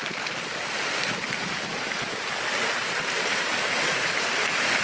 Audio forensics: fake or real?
real